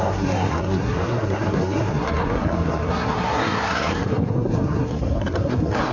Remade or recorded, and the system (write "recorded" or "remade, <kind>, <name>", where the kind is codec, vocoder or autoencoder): remade, codec, SNAC